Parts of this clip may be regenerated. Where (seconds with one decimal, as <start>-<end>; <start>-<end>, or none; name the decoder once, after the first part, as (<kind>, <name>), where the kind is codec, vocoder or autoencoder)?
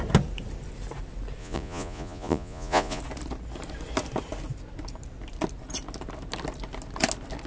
1.4-3.0 (vocoder, Vocos)